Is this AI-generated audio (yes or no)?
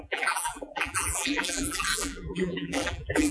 yes